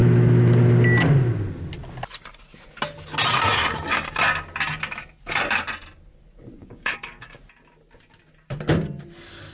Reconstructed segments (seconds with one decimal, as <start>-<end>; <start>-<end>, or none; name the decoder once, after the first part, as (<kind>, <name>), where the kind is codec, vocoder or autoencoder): 6.6-7.4 (codec, DAC)

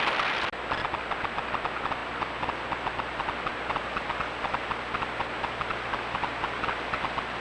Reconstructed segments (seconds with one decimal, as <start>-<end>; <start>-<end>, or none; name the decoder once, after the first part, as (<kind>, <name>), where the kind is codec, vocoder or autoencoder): none